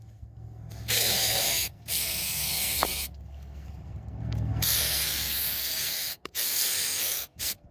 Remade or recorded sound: remade